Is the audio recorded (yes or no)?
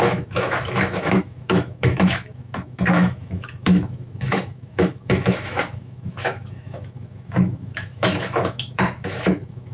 no